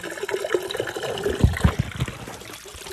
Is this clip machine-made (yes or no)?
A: no